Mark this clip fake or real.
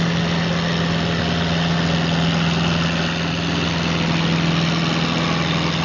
real